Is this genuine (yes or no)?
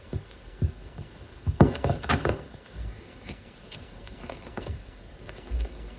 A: no